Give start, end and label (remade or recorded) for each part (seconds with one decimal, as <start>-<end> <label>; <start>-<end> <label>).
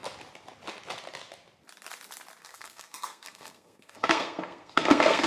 0.0-2.4 recorded; 2.4-5.3 remade